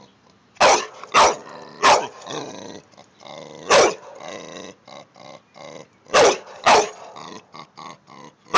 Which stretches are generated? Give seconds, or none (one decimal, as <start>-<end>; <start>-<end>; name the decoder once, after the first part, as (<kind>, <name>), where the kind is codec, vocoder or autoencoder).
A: 1.4-3.2 (vocoder, BigVGAN v2)